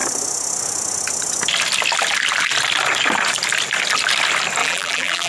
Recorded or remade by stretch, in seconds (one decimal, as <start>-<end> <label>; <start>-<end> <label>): 0.0-4.6 recorded; 4.6-5.3 remade